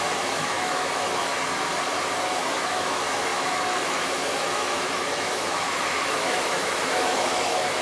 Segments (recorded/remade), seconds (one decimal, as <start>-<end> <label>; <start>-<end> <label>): 0.0-1.3 remade; 1.3-2.7 recorded; 2.7-7.8 remade